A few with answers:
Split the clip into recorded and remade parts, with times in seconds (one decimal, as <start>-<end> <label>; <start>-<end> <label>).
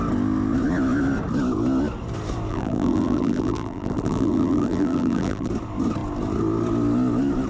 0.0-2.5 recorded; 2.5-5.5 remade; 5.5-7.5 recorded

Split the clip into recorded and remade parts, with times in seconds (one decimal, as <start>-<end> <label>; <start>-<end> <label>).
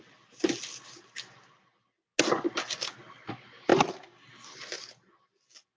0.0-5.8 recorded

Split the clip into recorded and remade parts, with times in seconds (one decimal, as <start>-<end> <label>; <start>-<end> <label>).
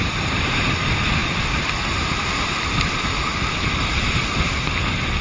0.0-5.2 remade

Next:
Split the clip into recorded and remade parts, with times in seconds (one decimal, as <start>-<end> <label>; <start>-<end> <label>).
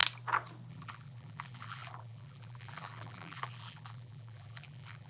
0.0-0.7 recorded; 0.7-5.1 remade